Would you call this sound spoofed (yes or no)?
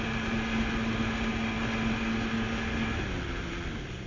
no